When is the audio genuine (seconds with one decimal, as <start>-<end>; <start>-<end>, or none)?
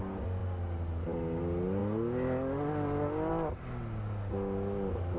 0.0-5.2